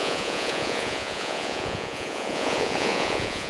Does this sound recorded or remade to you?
remade